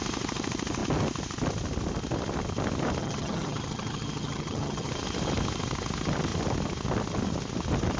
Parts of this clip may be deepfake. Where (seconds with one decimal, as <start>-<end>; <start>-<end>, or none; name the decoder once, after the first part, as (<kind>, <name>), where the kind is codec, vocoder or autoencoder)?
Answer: 3.0-4.9 (vocoder, HiFi-GAN)